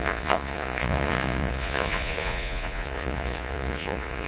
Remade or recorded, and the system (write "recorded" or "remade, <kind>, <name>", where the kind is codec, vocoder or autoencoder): remade, vocoder, Vocos